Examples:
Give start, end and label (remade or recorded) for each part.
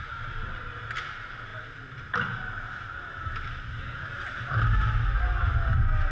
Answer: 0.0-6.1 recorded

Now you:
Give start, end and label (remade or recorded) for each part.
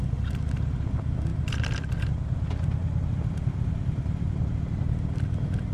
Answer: 0.0-2.8 recorded; 2.8-5.3 remade; 5.3-5.7 recorded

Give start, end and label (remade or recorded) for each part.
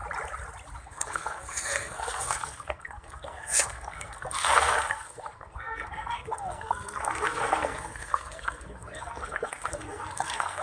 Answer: 0.0-0.8 recorded; 0.8-10.6 remade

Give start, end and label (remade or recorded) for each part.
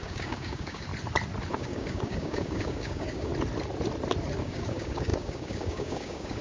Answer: 0.0-0.9 remade; 0.9-1.5 recorded; 1.5-3.3 remade; 3.3-4.4 recorded; 4.4-6.4 remade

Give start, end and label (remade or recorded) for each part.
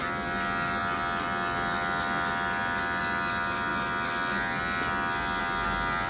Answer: 0.0-6.1 recorded